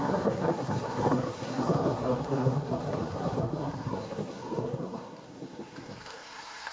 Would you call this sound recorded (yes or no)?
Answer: no